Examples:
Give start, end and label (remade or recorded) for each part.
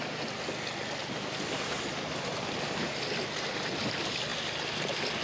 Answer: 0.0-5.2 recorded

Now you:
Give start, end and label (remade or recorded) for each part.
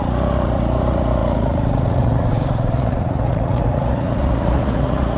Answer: 0.0-5.2 remade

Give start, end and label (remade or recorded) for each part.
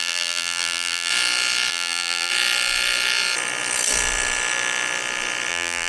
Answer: 0.0-1.1 remade; 1.1-1.7 recorded; 1.7-2.3 remade; 2.3-5.5 recorded; 5.5-5.9 remade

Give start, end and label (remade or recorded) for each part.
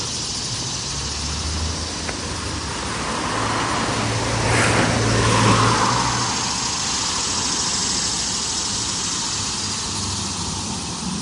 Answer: 0.0-11.2 recorded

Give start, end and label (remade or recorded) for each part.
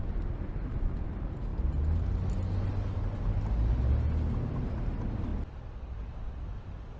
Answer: 0.0-7.0 recorded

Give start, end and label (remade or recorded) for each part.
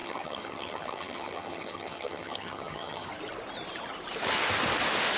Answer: 0.0-3.1 remade; 3.1-5.2 recorded